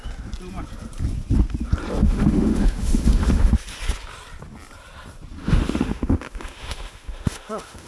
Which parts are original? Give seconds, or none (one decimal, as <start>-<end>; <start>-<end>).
0.0-2.0; 3.5-5.4